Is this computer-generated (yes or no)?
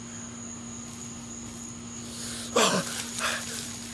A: no